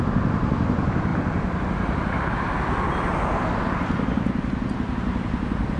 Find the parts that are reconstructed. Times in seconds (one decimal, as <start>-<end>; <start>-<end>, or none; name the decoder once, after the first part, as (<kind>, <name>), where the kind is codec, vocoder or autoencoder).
none